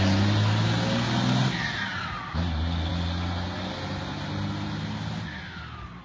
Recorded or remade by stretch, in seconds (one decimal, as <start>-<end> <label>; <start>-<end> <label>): 0.0-6.0 recorded